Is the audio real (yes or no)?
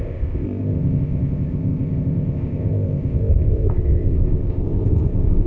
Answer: no